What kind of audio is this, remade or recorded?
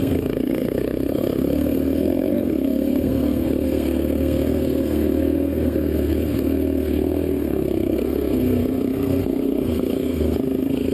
remade